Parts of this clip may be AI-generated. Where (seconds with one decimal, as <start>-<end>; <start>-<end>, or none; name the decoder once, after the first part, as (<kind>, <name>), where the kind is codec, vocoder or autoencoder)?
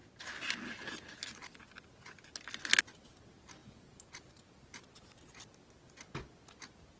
3.6-4.7 (vocoder, BigVGAN v2)